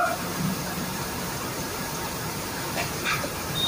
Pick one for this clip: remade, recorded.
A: remade